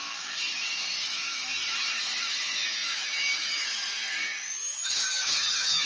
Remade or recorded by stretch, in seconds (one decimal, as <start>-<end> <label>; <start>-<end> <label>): 0.0-5.9 remade

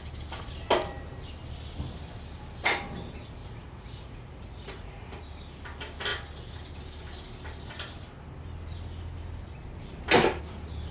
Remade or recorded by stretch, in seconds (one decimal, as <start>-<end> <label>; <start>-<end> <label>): 0.0-3.4 recorded; 3.4-5.2 remade; 5.2-10.9 recorded

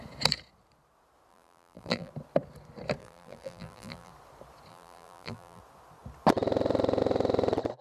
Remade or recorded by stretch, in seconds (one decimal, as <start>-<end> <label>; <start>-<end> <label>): 0.0-1.3 recorded; 1.3-2.1 remade; 2.1-3.0 recorded; 3.0-4.1 remade; 4.1-4.7 recorded; 4.7-5.6 remade; 5.6-7.8 recorded

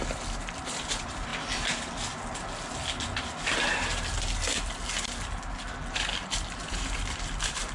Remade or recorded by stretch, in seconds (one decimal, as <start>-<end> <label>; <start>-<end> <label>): 0.0-1.3 remade; 1.3-5.9 recorded; 5.9-7.7 remade

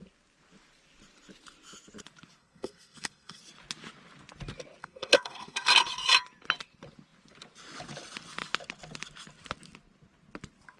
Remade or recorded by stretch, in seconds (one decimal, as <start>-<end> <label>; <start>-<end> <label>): 0.0-2.4 recorded; 2.4-3.4 remade; 3.4-4.8 recorded; 4.8-5.7 remade; 5.7-10.8 recorded

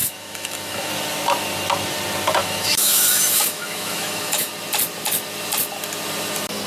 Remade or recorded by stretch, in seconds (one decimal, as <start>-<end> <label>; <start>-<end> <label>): 0.0-0.9 remade; 0.9-2.4 recorded; 2.4-4.5 remade; 4.5-6.7 recorded

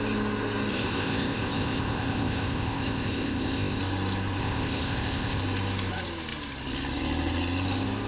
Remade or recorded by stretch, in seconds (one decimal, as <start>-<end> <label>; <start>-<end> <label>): 0.0-0.7 recorded; 0.7-3.8 remade; 3.8-4.4 recorded; 4.4-5.4 remade; 5.4-8.1 recorded

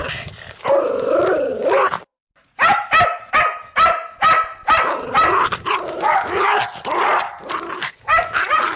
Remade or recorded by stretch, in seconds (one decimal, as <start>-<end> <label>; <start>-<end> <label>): 0.0-8.8 recorded